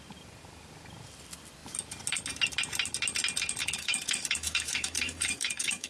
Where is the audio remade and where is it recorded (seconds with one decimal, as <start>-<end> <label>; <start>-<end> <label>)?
0.0-3.6 recorded; 3.6-5.9 remade